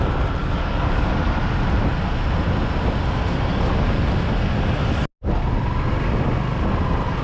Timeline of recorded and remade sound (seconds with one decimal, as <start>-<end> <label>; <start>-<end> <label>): 0.0-0.4 recorded; 0.4-1.1 remade; 1.1-3.5 recorded; 3.5-4.0 remade; 4.0-7.2 recorded